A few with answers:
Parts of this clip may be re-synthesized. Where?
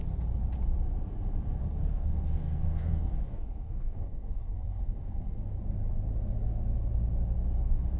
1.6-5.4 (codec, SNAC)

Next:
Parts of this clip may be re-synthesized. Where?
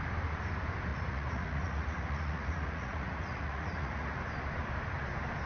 0.9-4.2 (vocoder, Vocos)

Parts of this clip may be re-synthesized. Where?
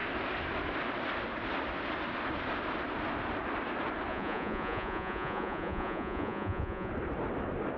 4.1-6.9 (vocoder, Vocos)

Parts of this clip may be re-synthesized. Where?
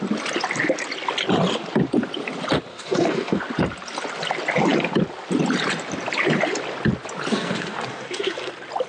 2.7-3.4 (codec, SNAC); 7.3-8.5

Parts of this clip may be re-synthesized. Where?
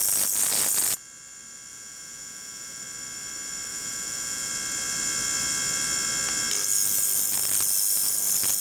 1.7-2.8 (vocoder, Vocos); 3.7-4.5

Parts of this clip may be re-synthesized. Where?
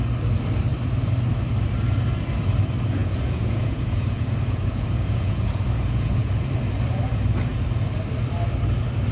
3.0-6.5 (vocoder, Vocos)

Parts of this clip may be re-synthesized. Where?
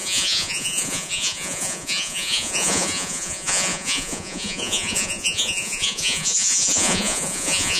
0.0-7.8 (vocoder, Vocos)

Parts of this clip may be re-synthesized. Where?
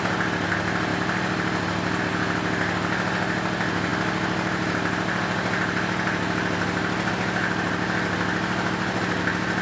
0.9-2.0 (vocoder, BigVGAN v2); 3.9-7.1